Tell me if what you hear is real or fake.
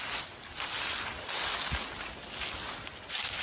real